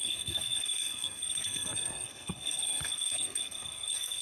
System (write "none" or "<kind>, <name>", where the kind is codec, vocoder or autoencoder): codec, SNAC